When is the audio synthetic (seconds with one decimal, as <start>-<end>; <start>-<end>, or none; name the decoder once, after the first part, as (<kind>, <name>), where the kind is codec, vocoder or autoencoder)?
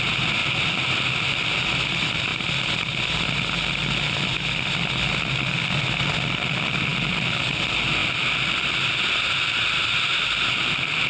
0.4-1.4 (vocoder, BigVGAN v2); 8.0-10.2